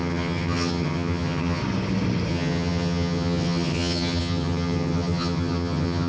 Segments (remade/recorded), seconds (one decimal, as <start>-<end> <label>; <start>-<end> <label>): 0.0-1.6 remade; 1.6-2.3 recorded; 2.3-6.1 remade